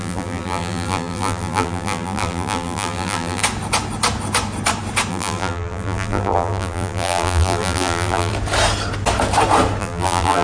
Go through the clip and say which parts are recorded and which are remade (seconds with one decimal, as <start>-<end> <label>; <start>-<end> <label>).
0.0-3.4 remade; 3.4-5.1 recorded; 5.1-8.3 remade; 8.3-9.8 recorded; 9.8-10.4 remade